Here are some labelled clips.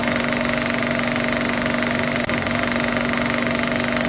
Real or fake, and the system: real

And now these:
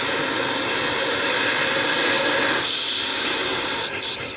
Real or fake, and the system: real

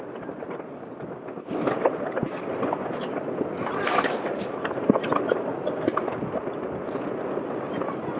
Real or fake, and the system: real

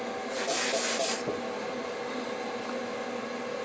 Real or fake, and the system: real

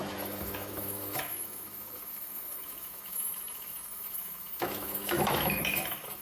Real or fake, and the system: fake, autoencoder, DAC-VAE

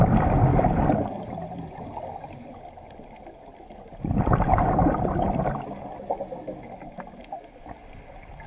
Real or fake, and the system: real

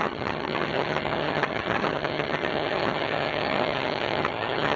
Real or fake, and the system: fake, vocoder, HiFi-GAN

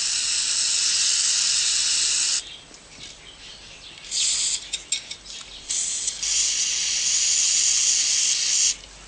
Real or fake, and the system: real